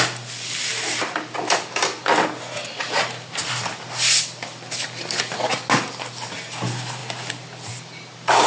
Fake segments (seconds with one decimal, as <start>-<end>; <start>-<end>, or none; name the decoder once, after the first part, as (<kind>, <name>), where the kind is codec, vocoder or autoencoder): none